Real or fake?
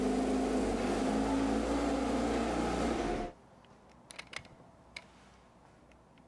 real